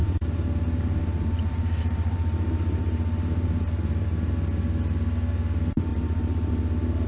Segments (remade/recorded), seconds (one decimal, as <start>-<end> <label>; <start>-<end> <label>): 0.0-4.3 remade; 4.3-5.9 recorded; 5.9-6.5 remade; 6.5-7.1 recorded